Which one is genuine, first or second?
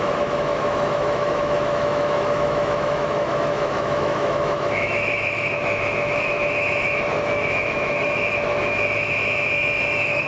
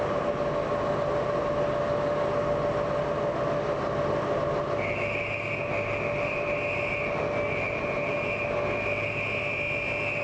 second